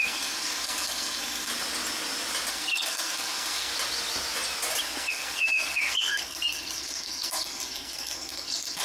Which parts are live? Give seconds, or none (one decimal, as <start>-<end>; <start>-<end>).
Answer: 1.5-2.5; 3.7-4.8